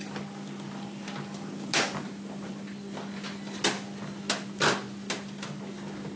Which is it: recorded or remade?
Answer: recorded